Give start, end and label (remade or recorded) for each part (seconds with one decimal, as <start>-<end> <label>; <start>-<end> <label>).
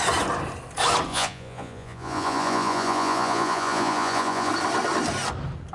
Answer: 0.0-1.1 recorded; 1.1-4.5 remade; 4.5-5.7 recorded